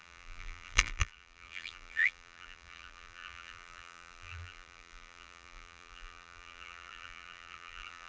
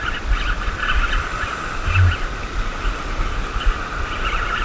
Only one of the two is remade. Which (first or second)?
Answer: first